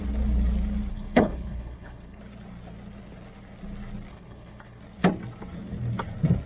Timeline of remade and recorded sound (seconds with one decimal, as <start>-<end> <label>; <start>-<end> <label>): 0.0-0.9 recorded; 0.9-2.2 remade; 2.2-4.1 recorded; 4.1-4.8 remade; 4.8-6.5 recorded